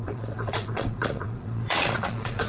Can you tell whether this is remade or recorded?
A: remade